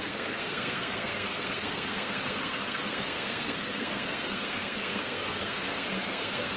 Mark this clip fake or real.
fake